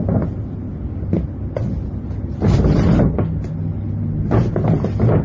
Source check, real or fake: real